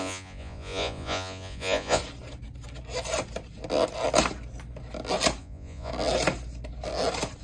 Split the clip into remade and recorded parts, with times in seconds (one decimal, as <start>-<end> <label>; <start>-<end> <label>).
0.0-2.0 remade; 2.0-5.4 recorded; 5.4-5.9 remade; 5.9-7.4 recorded